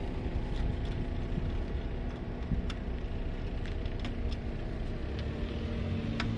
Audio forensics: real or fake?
real